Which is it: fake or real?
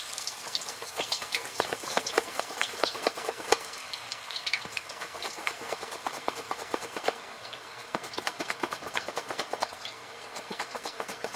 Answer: fake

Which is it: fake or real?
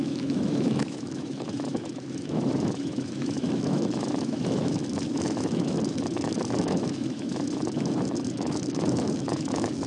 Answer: fake